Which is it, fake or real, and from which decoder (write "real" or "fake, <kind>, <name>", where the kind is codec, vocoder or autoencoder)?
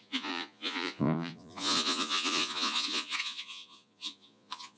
fake, vocoder, Vocos